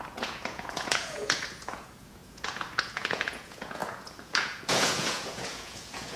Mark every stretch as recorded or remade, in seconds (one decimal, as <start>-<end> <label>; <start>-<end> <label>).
0.0-6.2 remade